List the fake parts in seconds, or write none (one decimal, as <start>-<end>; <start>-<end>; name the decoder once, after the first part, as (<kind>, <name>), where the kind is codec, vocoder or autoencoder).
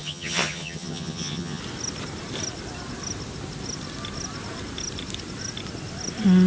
0.0-1.6 (vocoder, HiFi-GAN)